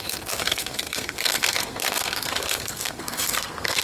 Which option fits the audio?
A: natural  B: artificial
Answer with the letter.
B